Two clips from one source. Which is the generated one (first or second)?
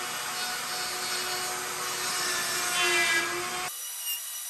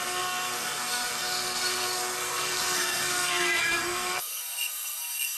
second